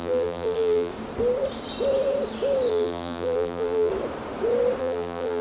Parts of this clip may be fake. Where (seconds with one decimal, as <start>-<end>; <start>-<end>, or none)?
0.0-0.9; 2.7-3.9; 4.8-5.4